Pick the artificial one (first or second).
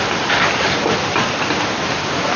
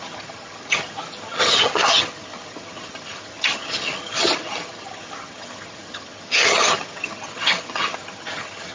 second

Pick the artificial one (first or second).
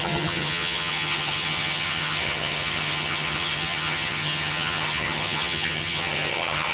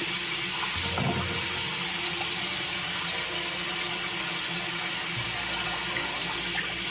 first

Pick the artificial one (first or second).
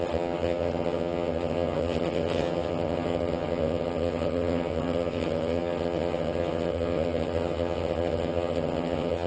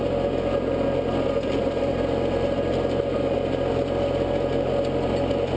first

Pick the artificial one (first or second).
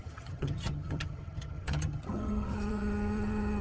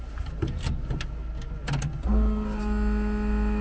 first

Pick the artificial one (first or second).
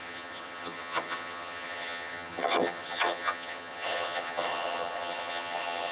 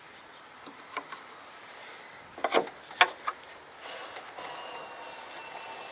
first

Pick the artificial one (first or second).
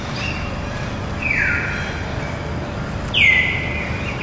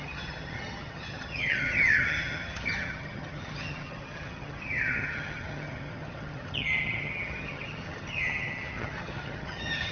second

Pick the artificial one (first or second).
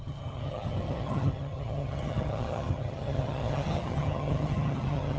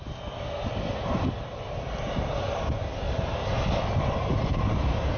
first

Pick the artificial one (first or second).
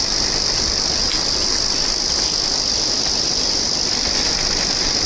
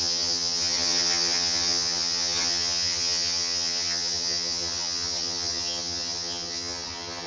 second